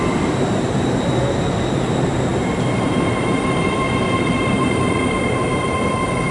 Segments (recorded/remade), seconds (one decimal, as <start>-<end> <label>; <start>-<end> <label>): 0.0-2.3 recorded; 2.3-6.3 remade